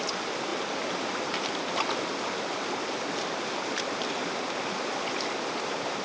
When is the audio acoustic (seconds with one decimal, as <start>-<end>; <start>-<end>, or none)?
0.0-6.0

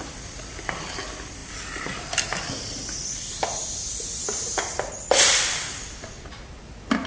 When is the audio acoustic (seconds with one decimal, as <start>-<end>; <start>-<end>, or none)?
0.0-7.1

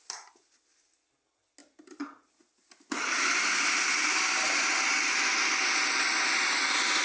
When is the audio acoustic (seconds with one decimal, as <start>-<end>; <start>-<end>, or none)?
0.0-7.0

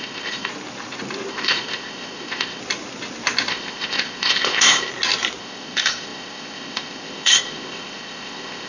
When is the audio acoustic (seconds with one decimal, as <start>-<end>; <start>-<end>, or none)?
0.5-1.3; 2.6-3.5; 4.9-5.4

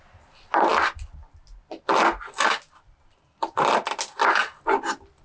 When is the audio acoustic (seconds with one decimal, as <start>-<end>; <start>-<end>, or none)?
0.0-5.2

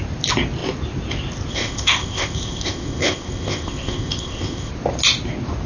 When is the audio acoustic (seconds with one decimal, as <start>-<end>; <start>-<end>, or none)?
0.0-1.5; 4.7-5.7

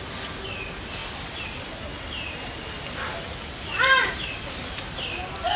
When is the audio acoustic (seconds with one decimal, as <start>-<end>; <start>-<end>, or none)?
0.0-5.6